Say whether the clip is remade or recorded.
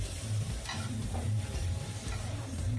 remade